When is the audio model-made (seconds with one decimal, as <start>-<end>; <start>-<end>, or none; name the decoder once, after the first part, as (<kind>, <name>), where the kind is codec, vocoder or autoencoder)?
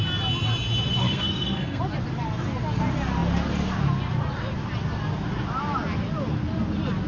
1.0-1.8 (codec, SNAC)